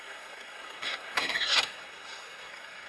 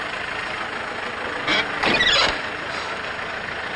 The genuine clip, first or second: second